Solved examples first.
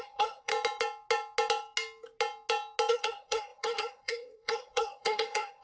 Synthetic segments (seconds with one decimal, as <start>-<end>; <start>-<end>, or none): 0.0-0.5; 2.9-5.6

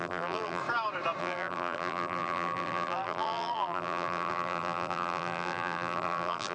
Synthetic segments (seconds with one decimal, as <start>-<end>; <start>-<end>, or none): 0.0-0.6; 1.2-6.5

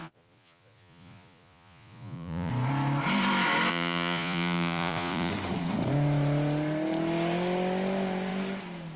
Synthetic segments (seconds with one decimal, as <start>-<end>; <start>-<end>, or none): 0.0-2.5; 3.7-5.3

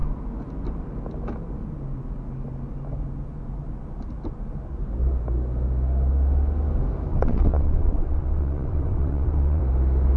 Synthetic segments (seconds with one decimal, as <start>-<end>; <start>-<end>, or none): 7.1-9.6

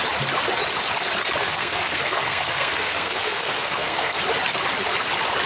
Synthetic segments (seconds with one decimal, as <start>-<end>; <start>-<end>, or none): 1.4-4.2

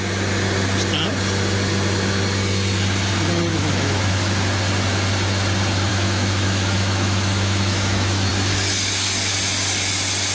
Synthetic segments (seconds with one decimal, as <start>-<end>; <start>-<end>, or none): 3.5-4.1; 5.9-8.3